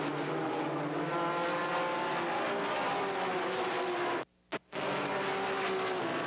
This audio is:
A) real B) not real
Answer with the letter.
A